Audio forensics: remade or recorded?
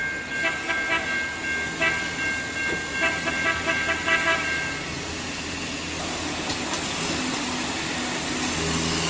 recorded